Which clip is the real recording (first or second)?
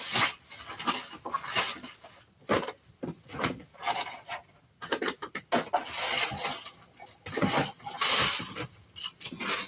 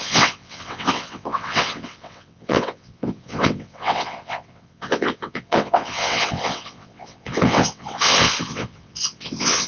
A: first